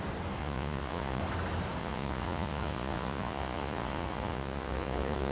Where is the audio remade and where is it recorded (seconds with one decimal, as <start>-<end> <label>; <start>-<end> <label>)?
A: 0.0-0.4 recorded; 0.4-1.2 remade; 1.2-1.8 recorded; 1.8-5.3 remade

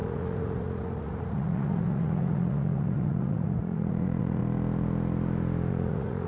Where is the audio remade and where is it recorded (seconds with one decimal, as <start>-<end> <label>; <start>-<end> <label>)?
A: 0.0-4.4 remade; 4.4-5.7 recorded; 5.7-6.3 remade

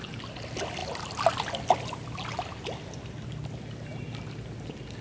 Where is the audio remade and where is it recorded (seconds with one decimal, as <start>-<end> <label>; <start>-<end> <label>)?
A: 0.0-5.0 recorded

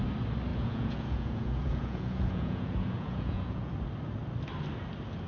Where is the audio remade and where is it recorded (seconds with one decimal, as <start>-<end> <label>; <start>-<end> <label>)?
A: 0.0-0.5 recorded; 0.5-3.7 remade; 3.7-5.3 recorded

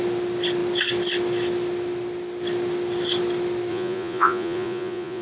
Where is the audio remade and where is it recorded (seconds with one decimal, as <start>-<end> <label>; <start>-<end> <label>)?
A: 0.0-3.7 recorded; 3.7-5.2 remade